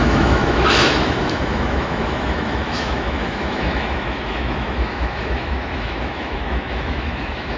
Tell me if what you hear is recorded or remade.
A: remade